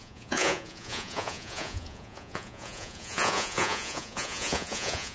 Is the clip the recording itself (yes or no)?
no